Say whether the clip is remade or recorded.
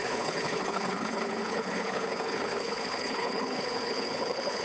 remade